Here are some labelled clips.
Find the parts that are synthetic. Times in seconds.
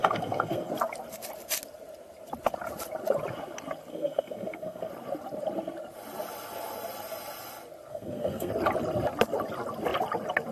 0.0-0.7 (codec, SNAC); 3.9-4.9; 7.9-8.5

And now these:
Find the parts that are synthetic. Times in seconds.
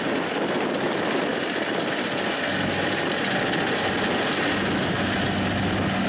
none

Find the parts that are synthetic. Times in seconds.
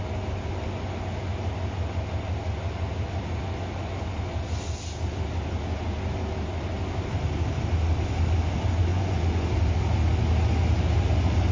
8.9-9.5 (vocoder, Vocos)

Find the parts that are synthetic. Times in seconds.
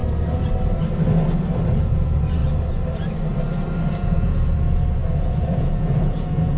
1.8-2.4 (vocoder, Vocos); 3.9-6.6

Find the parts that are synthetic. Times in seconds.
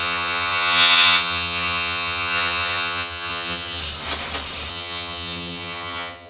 0.0-3.8 (vocoder, HiFi-GAN); 4.7-6.3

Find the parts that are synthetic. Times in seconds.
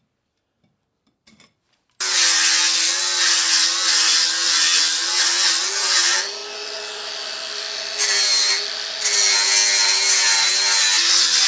none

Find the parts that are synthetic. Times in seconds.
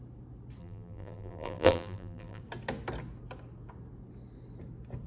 0.6-2.4 (vocoder, BigVGAN v2)